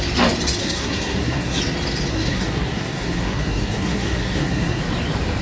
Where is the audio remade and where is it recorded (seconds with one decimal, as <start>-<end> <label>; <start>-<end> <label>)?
0.0-0.6 recorded; 0.6-1.6 remade; 1.6-2.1 recorded; 2.1-4.8 remade; 4.8-5.4 recorded